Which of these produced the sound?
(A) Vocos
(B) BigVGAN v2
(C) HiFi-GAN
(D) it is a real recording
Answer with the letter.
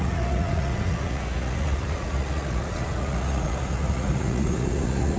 A